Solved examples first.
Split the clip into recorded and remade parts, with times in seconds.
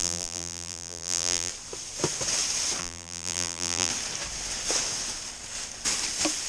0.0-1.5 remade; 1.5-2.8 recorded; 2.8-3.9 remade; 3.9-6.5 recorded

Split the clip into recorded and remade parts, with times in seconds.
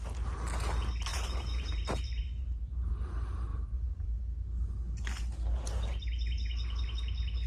0.0-1.1 recorded; 1.1-2.9 remade; 2.9-3.5 recorded; 3.5-4.1 remade; 4.1-7.5 recorded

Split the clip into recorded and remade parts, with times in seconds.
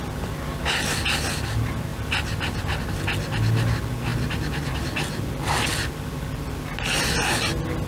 0.0-1.9 recorded; 1.9-2.8 remade; 2.8-7.9 recorded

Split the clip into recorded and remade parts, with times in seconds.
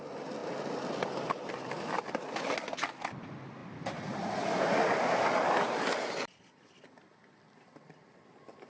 0.0-0.4 recorded; 0.4-2.5 remade; 2.5-3.6 recorded; 3.6-8.1 remade; 8.1-8.7 recorded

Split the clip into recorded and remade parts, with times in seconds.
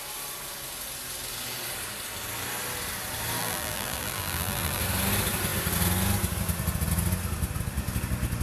0.0-3.4 recorded; 3.4-4.8 remade; 4.8-8.4 recorded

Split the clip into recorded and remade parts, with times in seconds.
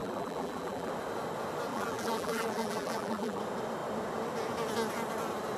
0.0-0.9 remade; 0.9-1.7 recorded; 1.7-3.4 remade; 3.4-5.6 recorded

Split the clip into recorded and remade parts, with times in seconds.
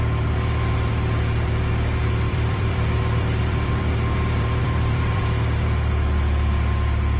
0.0-2.3 recorded; 2.3-3.8 remade; 3.8-4.6 recorded; 4.6-5.2 remade; 5.2-7.2 recorded